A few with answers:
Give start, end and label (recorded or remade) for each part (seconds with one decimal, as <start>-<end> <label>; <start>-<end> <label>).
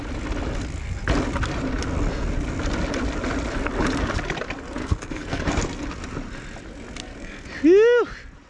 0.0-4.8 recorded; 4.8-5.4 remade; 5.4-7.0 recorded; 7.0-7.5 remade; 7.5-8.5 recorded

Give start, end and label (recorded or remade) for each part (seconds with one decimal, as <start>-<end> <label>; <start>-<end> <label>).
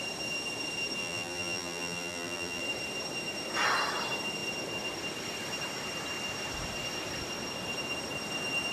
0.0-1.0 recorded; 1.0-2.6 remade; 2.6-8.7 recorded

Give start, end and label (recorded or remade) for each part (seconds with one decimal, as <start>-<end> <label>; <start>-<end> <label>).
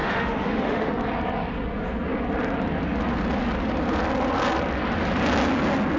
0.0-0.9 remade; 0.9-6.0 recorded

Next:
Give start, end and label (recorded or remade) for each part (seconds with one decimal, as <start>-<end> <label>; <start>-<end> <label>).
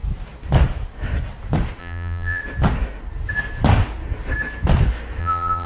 0.0-1.8 recorded; 1.8-2.4 remade; 2.4-5.2 recorded; 5.2-5.7 remade